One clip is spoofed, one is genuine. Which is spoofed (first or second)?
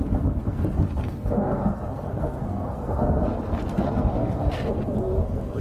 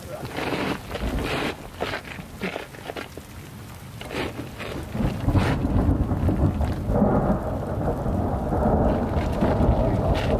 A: first